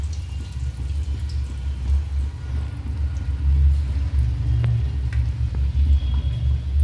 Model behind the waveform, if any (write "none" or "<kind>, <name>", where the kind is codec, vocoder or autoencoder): none